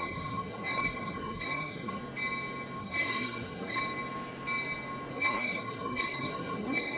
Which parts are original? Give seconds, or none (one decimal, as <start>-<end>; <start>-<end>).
2.0-2.8; 3.8-5.1